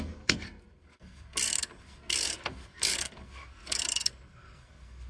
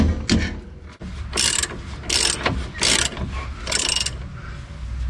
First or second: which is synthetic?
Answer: first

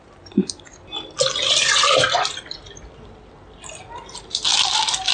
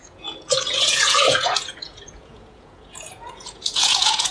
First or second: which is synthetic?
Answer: second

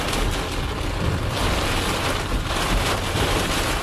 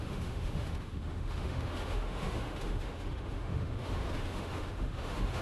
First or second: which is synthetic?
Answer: second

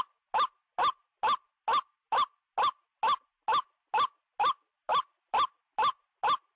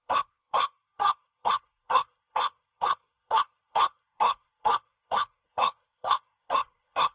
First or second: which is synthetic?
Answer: second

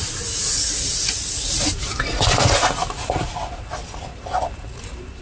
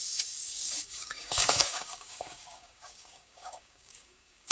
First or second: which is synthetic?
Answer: second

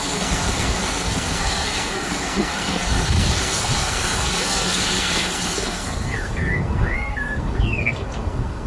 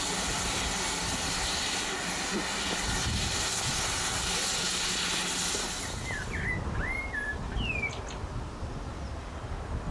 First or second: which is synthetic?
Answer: first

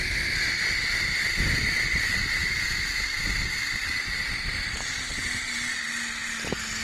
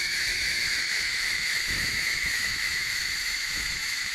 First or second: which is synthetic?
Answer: second